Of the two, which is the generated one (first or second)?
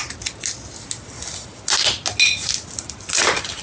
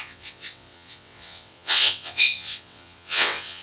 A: second